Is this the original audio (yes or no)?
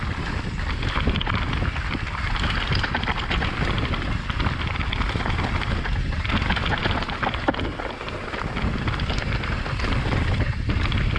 yes